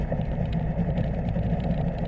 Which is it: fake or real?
real